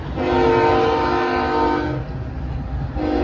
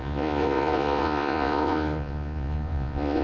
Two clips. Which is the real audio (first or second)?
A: first